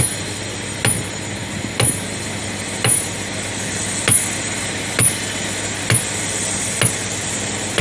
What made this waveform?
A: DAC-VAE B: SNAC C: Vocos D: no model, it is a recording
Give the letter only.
D